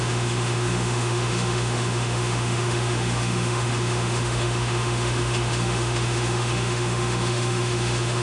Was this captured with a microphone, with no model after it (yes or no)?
no